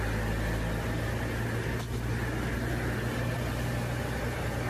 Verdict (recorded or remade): recorded